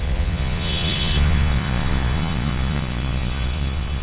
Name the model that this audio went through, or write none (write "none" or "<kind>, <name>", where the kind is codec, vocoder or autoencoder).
vocoder, Vocos